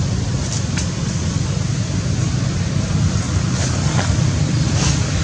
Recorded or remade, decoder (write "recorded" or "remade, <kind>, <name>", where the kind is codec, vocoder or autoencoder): recorded